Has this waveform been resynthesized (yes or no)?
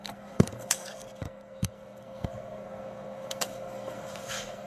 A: yes